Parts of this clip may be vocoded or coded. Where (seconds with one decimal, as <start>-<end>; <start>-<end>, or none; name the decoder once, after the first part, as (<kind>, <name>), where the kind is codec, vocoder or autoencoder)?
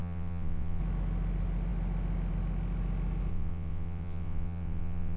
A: 0.0-0.8 (vocoder, WaveNeXt); 3.3-5.2